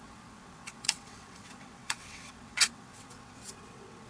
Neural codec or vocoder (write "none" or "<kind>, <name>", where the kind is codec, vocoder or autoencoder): vocoder, WaveNeXt